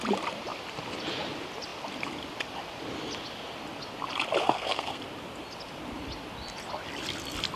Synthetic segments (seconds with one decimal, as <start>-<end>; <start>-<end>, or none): 4.4-5.0